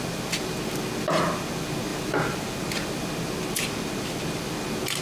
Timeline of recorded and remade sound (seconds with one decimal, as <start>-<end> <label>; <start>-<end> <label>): 0.0-5.0 recorded